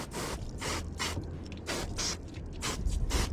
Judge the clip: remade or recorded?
recorded